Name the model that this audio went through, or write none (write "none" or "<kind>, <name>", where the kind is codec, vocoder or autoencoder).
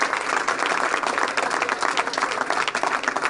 none